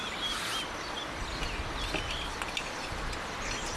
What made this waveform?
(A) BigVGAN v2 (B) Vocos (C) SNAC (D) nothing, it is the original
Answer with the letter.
D